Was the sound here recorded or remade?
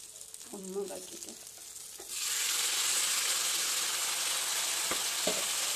recorded